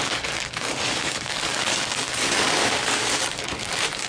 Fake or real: fake